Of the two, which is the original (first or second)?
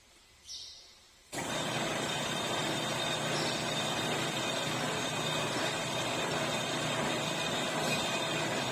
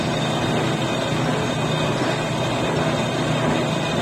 second